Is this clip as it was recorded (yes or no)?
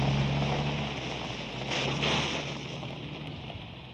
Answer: yes